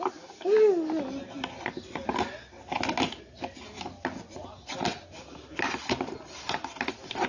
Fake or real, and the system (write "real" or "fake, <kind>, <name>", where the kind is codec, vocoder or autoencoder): real